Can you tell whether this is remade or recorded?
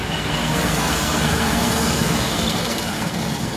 remade